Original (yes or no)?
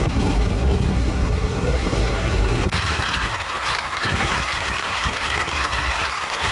no